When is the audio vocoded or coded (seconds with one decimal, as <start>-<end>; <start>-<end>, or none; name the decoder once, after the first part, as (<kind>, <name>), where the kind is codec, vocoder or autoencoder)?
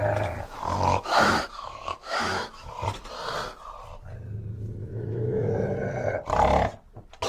0.9-2.7 (autoencoder, DAC-VAE); 4.8-5.5